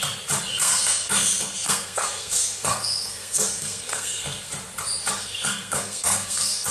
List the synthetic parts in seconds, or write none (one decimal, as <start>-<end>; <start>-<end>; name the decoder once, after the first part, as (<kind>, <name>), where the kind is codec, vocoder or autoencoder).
0.5-4.5 (codec, SNAC); 5.2-6.7